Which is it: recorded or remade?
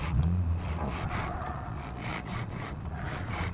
remade